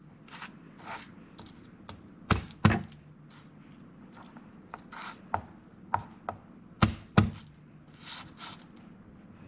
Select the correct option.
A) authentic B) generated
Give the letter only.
A